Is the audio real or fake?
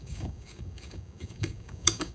fake